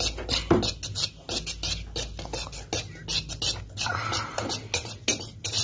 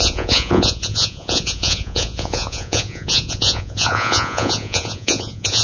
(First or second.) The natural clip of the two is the first